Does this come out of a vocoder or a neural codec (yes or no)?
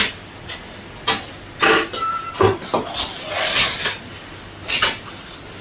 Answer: no